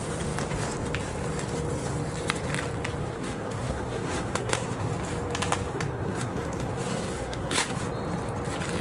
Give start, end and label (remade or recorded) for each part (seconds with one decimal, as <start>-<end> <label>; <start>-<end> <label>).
0.0-3.0 recorded; 3.0-4.9 remade; 4.9-5.7 recorded; 5.7-7.8 remade; 7.8-8.8 recorded

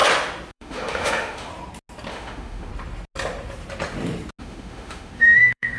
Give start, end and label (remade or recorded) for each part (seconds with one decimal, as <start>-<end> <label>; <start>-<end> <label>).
0.0-0.5 recorded; 0.5-1.5 remade; 1.5-2.1 recorded; 2.1-2.7 remade; 2.7-4.4 recorded; 4.4-5.8 remade

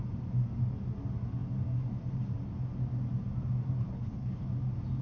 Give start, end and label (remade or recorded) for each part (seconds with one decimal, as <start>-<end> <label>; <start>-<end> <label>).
0.0-3.8 recorded; 3.8-4.5 remade; 4.5-5.0 recorded

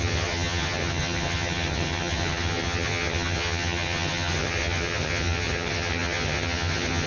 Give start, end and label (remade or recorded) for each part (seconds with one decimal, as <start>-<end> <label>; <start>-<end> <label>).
0.0-7.1 remade